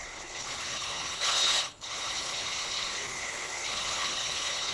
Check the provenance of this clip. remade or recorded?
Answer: remade